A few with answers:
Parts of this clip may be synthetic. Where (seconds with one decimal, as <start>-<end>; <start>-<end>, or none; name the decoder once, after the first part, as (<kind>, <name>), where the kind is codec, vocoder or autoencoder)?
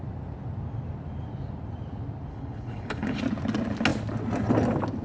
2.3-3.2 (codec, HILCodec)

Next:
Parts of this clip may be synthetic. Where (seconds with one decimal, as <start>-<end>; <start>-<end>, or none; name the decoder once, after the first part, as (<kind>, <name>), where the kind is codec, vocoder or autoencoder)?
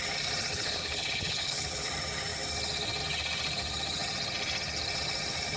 0.5-1.9 (codec, HILCodec)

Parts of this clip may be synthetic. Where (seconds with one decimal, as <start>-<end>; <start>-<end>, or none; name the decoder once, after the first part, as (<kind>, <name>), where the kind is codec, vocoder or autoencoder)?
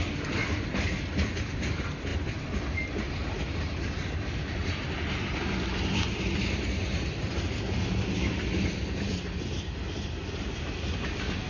none